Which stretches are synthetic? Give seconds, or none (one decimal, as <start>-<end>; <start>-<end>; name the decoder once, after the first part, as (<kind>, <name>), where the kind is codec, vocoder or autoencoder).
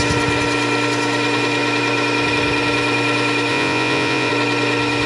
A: 3.5-4.3 (vocoder, Vocos)